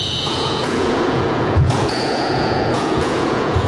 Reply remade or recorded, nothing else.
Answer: remade